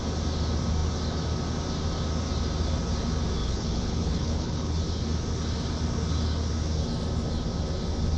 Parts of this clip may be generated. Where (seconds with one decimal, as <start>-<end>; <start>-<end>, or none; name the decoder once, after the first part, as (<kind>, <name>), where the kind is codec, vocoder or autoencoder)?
3.4-4.8 (codec, HILCodec)